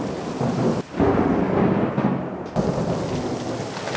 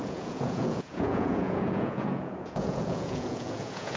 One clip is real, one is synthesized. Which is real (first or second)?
first